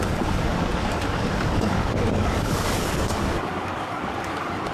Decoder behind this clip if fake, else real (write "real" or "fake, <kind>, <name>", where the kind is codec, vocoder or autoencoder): fake, codec, DAC